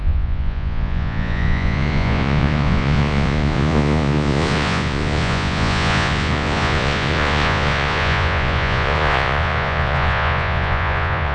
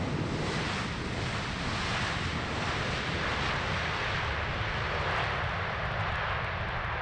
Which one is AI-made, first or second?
first